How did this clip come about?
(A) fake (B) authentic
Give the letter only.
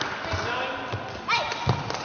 B